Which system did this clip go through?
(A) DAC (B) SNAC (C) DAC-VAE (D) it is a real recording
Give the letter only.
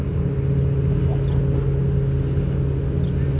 D